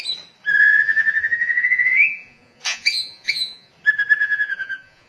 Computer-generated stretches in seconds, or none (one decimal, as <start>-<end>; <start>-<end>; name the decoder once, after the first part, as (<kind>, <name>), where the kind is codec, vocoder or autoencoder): 0.6-3.7 (vocoder, Vocos); 4.2-5.1